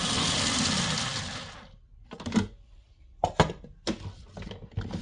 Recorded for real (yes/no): yes